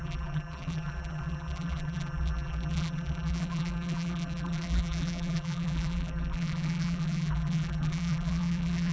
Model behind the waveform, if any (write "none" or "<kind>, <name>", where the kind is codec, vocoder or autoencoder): vocoder, BigVGAN v2